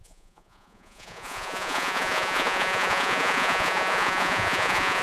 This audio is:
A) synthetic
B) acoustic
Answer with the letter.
A